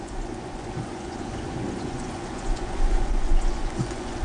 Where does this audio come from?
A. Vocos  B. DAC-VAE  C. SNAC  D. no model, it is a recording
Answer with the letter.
A